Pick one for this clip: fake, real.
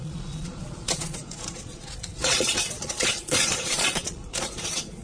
fake